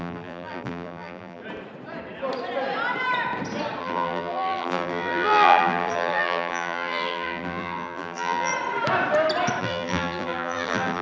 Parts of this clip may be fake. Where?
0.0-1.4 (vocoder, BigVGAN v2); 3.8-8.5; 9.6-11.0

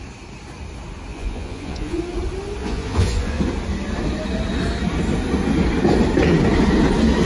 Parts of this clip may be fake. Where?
1.1-2.0 (vocoder, Vocos); 2.6-3.4

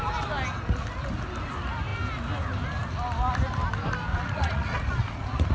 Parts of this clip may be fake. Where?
4.1-5.5 (vocoder, Vocos)